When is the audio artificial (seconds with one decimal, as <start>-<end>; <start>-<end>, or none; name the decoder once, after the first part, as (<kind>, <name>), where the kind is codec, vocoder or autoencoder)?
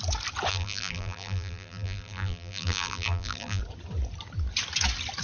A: 0.5-3.6 (vocoder, BigVGAN v2)